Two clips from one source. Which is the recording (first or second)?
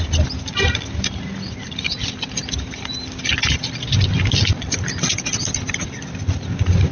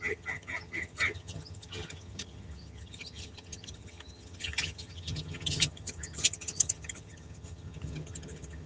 first